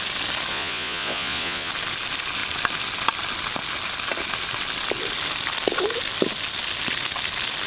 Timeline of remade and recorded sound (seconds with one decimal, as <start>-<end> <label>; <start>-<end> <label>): 0.0-0.5 recorded; 0.5-1.7 remade; 1.7-7.7 recorded